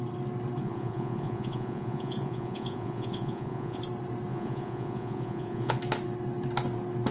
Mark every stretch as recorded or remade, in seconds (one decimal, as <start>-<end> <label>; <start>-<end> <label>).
0.0-0.6 recorded; 0.6-3.8 remade; 3.8-4.3 recorded; 4.3-5.8 remade; 5.8-7.1 recorded